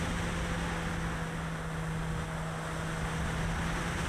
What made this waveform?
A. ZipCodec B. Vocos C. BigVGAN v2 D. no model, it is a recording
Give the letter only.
D